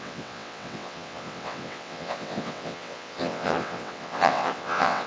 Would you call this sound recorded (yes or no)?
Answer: no